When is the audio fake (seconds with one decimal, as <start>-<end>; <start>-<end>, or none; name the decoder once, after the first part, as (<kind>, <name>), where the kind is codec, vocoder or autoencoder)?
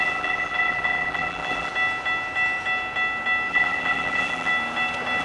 0.0-1.7 (vocoder, BigVGAN v2); 3.5-4.5